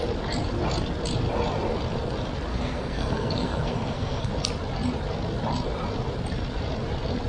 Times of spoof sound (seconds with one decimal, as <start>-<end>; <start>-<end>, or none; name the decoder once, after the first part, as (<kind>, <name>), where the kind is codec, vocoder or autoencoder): 2.5-4.3 (codec, SNAC)